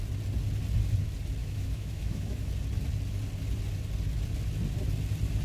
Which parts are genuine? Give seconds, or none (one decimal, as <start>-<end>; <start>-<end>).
0.0-1.4; 2.5-5.4